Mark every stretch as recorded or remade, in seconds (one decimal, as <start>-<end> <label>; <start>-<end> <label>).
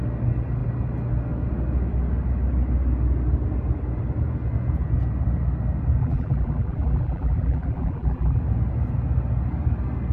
0.0-6.0 recorded; 6.0-8.4 remade; 8.4-10.1 recorded